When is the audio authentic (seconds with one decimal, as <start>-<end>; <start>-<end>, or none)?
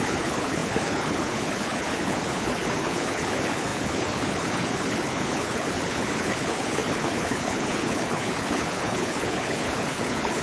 none